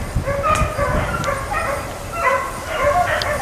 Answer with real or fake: real